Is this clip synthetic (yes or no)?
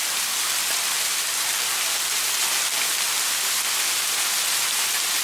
no